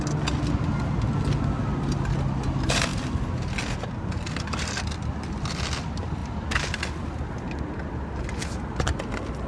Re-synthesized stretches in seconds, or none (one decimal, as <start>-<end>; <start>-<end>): none